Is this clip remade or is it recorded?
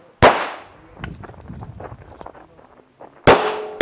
recorded